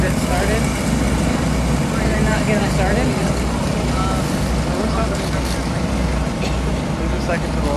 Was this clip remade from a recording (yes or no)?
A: no